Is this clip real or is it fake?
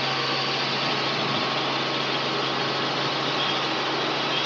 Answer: real